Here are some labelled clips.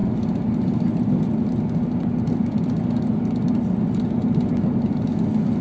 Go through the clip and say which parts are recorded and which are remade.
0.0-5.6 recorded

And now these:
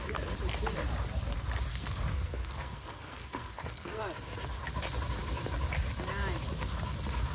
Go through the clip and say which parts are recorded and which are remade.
0.0-1.7 recorded; 1.7-4.0 remade; 4.0-7.3 recorded

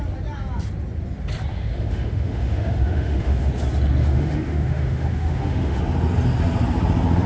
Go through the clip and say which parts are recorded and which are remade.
0.0-1.5 recorded; 1.5-3.5 remade; 3.5-4.0 recorded; 4.0-5.8 remade; 5.8-7.3 recorded

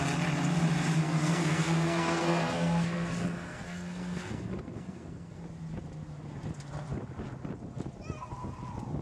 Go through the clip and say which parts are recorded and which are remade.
0.0-1.0 recorded; 1.0-5.4 remade; 5.4-9.0 recorded

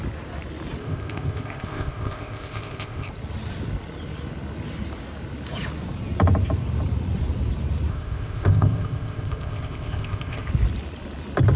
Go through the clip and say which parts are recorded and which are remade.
0.0-0.8 recorded; 0.8-3.1 remade; 3.1-7.9 recorded; 7.9-10.5 remade; 10.5-11.6 recorded

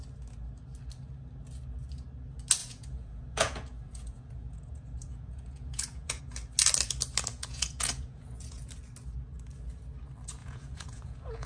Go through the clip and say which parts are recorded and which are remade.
0.0-2.6 recorded; 2.6-6.2 remade; 6.2-7.3 recorded; 7.3-8.7 remade; 8.7-10.4 recorded; 10.4-11.5 remade

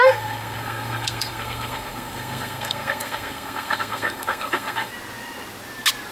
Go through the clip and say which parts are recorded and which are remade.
0.0-4.9 remade; 4.9-6.1 recorded

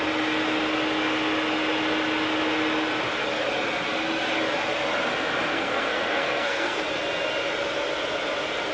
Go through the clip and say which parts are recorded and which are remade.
0.0-5.5 recorded; 5.5-6.8 remade; 6.8-8.7 recorded